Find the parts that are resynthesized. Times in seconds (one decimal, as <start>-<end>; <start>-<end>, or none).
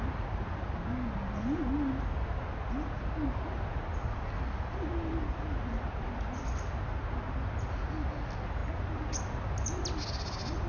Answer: none